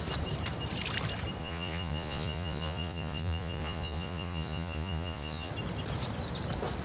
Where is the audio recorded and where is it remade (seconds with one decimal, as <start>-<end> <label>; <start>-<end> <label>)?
0.0-1.4 recorded; 1.4-5.5 remade; 5.5-6.8 recorded